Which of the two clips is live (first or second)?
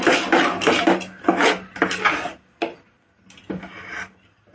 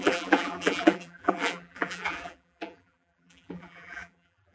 first